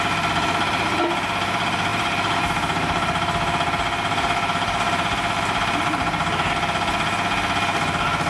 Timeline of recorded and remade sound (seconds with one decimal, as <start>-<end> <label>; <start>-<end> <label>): 0.0-1.9 recorded; 1.9-6.5 remade; 6.5-8.3 recorded